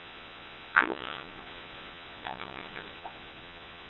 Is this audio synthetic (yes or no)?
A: yes